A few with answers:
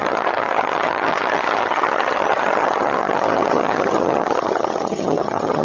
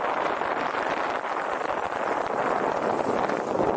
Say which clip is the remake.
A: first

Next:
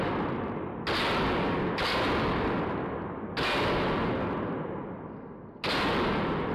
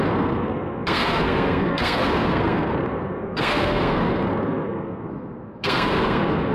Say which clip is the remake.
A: second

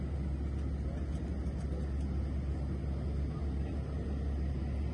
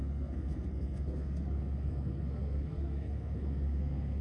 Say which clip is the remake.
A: second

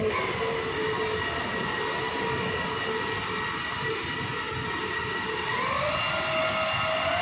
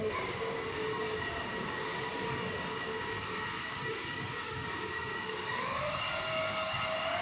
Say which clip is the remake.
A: second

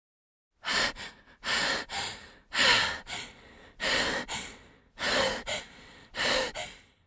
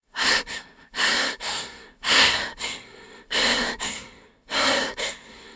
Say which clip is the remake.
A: second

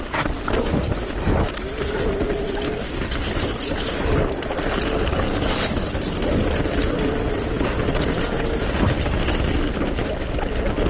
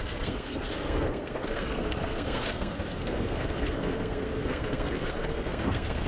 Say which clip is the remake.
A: second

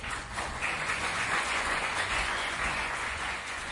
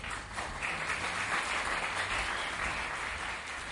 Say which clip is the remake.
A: first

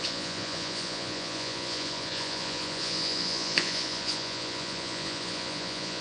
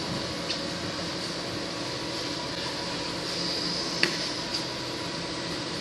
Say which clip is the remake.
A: first